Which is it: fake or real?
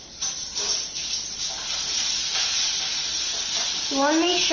real